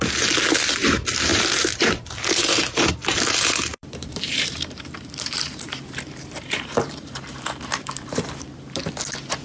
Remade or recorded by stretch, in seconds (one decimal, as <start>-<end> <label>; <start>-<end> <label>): 0.0-1.3 recorded; 1.3-2.9 remade; 2.9-3.7 recorded; 3.7-8.8 remade; 8.8-9.4 recorded